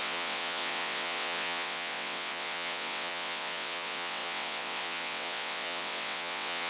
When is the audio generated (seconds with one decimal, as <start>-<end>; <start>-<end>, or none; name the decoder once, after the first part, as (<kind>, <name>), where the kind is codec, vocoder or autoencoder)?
0.0-6.7 (vocoder, WaveNeXt)